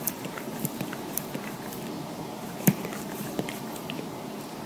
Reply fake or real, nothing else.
fake